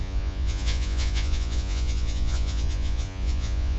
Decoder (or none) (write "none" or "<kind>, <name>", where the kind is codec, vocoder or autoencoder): vocoder, Vocos